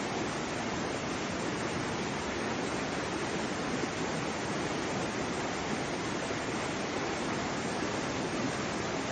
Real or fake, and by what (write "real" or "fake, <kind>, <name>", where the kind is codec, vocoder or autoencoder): real